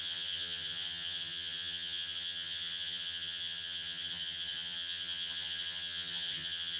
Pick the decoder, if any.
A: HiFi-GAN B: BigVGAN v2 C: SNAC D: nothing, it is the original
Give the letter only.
A